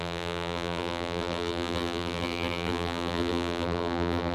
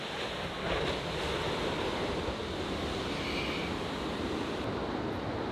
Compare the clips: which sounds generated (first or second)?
first